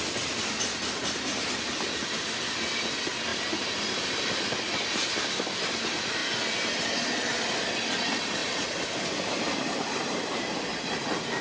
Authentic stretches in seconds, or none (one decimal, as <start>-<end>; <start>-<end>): 0.0-3.3; 4.2-8.4; 10.4-11.4

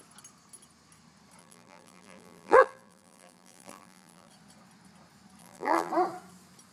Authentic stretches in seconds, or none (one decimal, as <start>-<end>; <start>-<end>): 0.0-1.4; 4.3-5.4; 5.9-6.7